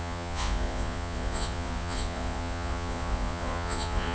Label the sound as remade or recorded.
remade